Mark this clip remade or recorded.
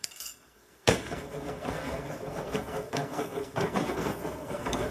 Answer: remade